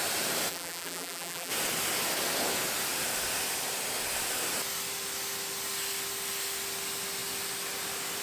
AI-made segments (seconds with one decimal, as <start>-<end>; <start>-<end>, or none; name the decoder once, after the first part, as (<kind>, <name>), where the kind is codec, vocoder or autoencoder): 0.5-1.5 (vocoder, BigVGAN v2)